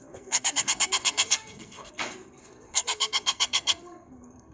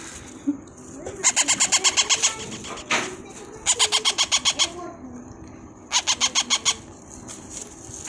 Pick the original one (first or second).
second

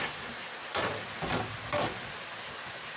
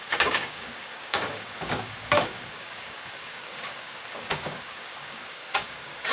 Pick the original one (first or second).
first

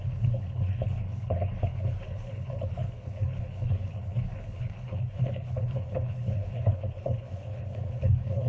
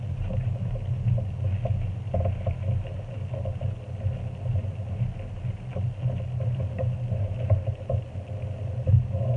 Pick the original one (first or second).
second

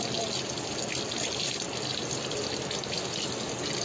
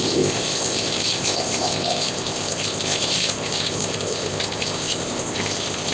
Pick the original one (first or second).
first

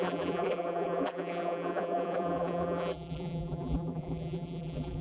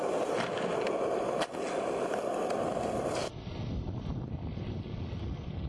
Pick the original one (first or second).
second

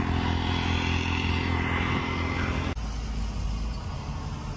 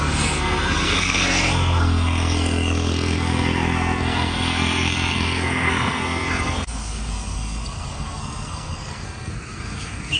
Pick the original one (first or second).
first